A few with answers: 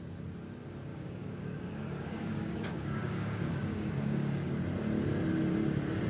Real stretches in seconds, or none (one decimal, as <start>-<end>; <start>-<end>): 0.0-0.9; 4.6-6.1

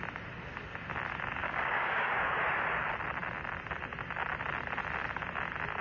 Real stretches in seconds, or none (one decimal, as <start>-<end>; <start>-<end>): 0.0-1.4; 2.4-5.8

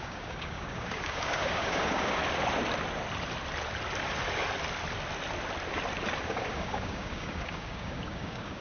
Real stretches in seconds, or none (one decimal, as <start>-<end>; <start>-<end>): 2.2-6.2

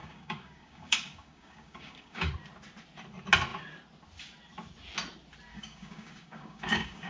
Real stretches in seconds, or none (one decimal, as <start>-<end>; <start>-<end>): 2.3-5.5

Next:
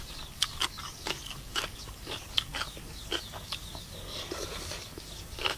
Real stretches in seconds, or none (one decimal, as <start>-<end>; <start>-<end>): none

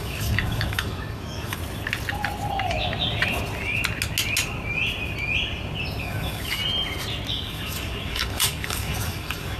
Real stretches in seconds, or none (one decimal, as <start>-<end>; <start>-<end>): 1.6-6.0; 6.6-7.3